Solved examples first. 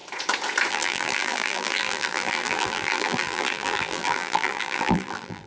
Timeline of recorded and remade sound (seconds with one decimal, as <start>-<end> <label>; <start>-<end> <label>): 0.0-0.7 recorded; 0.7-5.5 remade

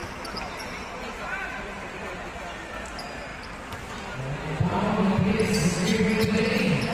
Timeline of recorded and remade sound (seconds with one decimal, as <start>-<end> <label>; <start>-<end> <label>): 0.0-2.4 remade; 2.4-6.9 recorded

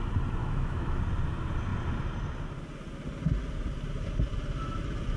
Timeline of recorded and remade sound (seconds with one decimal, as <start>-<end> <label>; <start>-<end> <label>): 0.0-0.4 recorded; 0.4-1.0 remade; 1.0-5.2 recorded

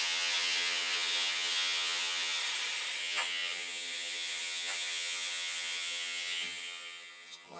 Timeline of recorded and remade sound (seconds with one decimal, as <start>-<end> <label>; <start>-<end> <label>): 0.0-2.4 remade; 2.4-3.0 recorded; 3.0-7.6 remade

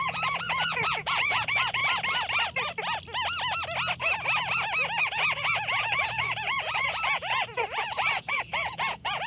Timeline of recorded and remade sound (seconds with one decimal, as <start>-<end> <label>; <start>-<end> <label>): 0.0-1.8 remade; 1.8-5.0 recorded; 5.0-9.3 remade

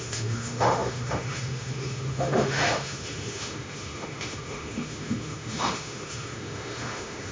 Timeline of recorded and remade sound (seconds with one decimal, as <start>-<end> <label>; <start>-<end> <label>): 0.0-7.3 remade

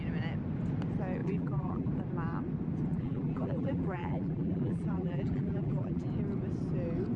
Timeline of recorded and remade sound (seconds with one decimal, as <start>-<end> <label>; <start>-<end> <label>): 0.0-1.2 recorded; 1.2-1.9 remade; 1.9-2.9 recorded; 2.9-6.1 remade; 6.1-7.2 recorded

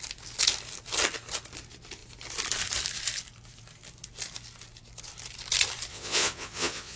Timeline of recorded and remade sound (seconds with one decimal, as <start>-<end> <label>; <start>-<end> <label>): 0.0-5.9 recorded; 5.9-7.0 remade